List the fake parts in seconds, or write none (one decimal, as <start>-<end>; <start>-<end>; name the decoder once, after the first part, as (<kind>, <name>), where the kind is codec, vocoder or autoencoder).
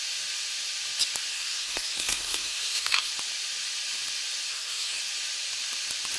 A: 1.3-3.1 (codec, SNAC); 4.5-5.0